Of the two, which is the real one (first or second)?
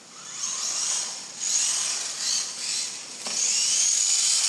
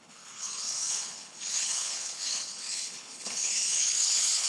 first